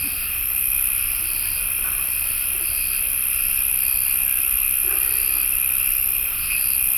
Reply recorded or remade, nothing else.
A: recorded